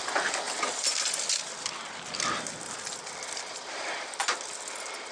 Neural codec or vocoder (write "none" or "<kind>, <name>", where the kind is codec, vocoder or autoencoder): vocoder, BigVGAN v2